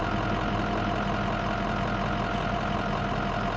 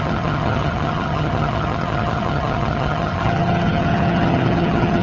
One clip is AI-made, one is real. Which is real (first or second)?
first